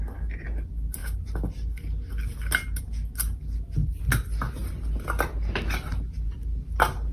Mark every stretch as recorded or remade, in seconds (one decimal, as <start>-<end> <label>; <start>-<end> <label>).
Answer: 0.0-7.1 recorded